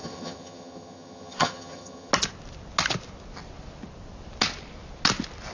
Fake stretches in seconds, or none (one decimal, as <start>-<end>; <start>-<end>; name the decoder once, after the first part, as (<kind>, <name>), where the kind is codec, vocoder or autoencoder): 0.0-2.1 (vocoder, HiFi-GAN)